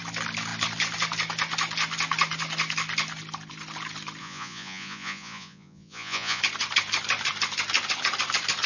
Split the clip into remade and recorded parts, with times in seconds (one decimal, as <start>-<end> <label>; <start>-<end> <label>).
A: 0.0-4.2 recorded; 4.2-6.4 remade; 6.4-8.7 recorded